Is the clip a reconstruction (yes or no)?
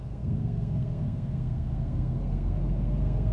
yes